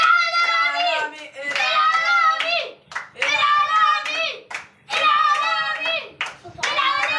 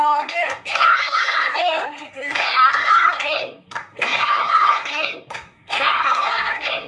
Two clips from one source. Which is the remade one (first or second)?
second